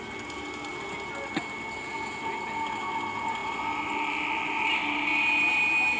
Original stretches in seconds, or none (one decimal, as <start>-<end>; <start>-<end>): 0.0-6.0